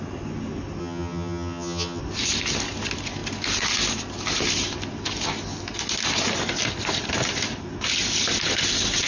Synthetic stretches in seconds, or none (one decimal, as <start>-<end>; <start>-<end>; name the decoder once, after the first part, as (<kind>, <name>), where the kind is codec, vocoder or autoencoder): 0.8-2.0 (vocoder, HiFi-GAN)